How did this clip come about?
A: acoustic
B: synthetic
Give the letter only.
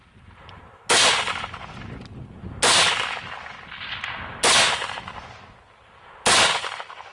A